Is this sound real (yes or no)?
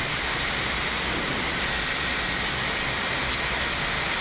yes